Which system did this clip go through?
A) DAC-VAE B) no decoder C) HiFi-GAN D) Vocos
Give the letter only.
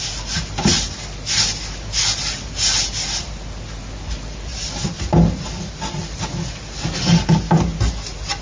B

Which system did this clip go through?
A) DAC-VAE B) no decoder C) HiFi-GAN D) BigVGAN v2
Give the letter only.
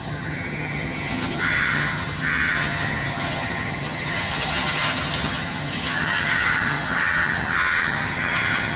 C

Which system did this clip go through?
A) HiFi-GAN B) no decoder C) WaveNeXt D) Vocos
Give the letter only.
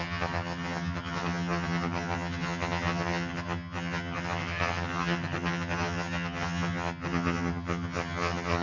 A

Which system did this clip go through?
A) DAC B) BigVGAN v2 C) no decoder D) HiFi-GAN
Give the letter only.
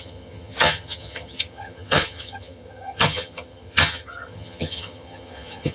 D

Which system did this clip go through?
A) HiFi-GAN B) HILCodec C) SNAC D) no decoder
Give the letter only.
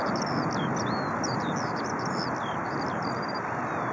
D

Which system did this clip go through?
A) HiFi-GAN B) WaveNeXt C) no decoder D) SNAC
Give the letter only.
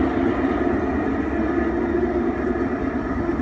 C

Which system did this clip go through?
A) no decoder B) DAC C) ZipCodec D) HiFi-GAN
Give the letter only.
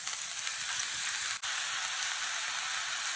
A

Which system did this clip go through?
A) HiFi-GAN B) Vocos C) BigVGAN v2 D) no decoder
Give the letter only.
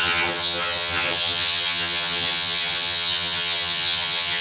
A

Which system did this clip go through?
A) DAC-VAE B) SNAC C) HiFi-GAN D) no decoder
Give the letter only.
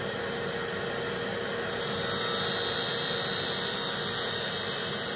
D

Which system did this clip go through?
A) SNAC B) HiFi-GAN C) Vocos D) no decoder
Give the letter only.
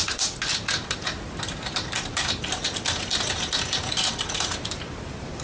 D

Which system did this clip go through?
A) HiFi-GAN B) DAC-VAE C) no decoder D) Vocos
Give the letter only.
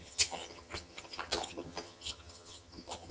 A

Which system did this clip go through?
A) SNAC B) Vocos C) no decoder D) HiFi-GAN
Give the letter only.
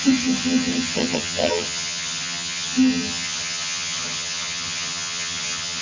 D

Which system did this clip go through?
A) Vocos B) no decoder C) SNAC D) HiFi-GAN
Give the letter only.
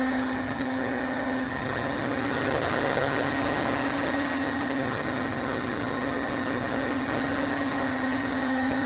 D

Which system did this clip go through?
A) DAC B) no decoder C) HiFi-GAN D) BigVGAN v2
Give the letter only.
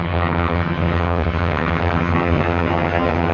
C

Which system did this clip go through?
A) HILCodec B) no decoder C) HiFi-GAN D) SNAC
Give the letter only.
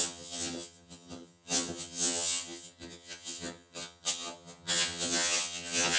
C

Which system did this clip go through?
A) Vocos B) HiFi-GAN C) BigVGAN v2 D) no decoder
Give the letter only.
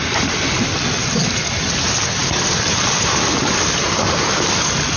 D